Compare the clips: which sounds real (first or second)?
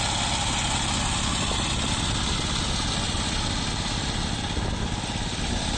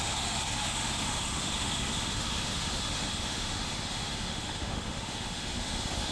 first